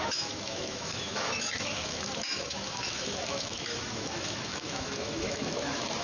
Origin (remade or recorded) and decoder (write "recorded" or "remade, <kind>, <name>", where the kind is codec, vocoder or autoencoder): remade, autoencoder, DAC-VAE